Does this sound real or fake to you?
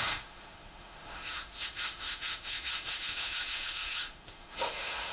fake